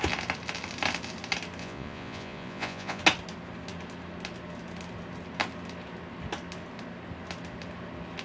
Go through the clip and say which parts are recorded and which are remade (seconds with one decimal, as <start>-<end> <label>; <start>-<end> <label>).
0.0-1.6 recorded; 1.6-3.0 remade; 3.0-8.2 recorded